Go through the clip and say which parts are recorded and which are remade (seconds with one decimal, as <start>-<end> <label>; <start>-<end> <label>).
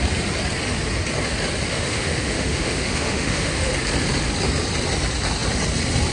0.0-1.7 recorded; 1.7-3.7 remade; 3.7-6.1 recorded